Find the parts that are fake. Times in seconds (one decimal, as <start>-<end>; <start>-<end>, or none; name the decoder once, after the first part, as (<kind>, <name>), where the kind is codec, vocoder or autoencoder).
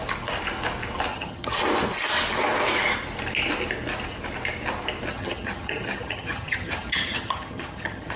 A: 1.1-1.6 (vocoder, HiFi-GAN); 5.1-8.2